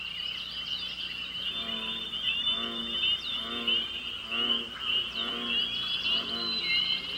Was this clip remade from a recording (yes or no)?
no